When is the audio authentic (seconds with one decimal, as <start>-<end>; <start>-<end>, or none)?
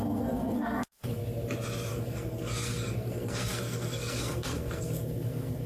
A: 1.2-1.9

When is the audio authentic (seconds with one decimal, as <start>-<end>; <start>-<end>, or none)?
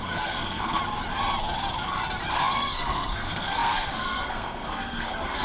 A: 0.8-2.3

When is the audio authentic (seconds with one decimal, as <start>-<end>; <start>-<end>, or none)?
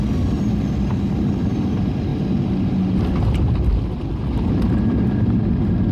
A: 0.0-5.9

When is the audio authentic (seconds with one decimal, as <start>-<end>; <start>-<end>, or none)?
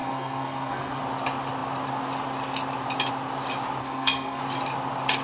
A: 1.0-3.8; 4.4-5.2